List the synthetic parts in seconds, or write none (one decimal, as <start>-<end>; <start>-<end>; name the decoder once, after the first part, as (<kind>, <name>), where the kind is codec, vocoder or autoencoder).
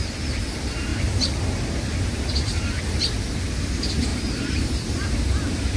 0.9-2.8 (vocoder, BigVGAN v2); 4.1-5.8